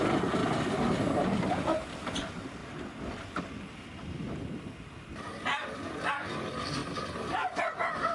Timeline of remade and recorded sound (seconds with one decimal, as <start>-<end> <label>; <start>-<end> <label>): 0.0-0.4 remade; 0.4-1.5 recorded; 1.5-2.6 remade; 2.6-5.3 recorded; 5.3-6.8 remade; 6.8-7.3 recorded; 7.3-8.1 remade